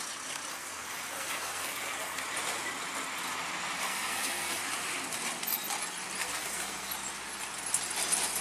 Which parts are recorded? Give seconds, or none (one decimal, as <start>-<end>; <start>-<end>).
0.0-0.5; 2.2-3.8; 4.6-6.2; 6.9-8.4